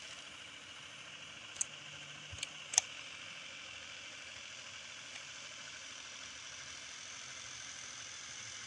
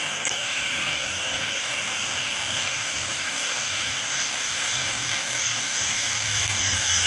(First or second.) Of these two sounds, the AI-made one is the second